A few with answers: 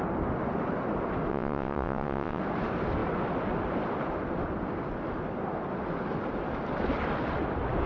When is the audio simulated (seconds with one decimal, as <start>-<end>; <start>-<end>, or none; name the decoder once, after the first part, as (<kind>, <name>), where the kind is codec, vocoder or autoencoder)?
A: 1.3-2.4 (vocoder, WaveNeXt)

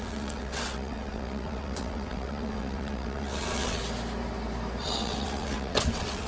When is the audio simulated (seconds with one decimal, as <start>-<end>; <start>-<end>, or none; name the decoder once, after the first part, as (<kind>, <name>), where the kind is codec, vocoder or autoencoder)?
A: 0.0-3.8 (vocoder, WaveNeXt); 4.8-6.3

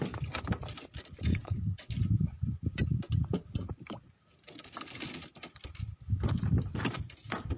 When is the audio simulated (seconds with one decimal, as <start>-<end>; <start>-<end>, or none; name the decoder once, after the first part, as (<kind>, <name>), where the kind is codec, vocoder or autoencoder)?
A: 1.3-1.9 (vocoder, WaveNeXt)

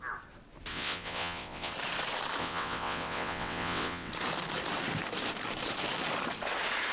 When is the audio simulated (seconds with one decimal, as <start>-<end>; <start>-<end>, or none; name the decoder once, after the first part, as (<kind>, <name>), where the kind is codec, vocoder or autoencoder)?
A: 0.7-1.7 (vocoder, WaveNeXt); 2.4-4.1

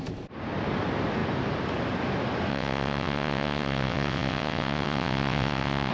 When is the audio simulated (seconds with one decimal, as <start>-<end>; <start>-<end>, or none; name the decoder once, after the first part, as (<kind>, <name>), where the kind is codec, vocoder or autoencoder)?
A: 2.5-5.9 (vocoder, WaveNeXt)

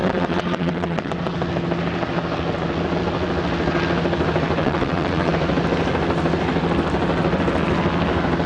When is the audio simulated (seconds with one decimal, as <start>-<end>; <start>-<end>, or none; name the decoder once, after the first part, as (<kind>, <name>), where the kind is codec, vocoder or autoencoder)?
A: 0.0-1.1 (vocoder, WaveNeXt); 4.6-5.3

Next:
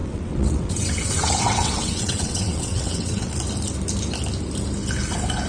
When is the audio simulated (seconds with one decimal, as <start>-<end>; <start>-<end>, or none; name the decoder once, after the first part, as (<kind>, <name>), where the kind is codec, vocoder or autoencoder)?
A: 0.0-3.3 (vocoder, WaveNeXt)

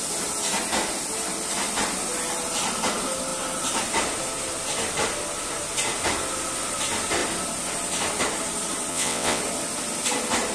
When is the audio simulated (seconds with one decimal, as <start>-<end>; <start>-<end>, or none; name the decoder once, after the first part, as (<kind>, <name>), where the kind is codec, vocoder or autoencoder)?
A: 8.9-9.4 (vocoder, WaveNeXt)